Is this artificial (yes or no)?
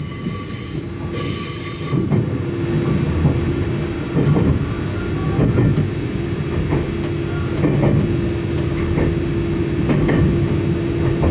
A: no